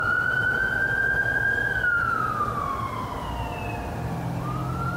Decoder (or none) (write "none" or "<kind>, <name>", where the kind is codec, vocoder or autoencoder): none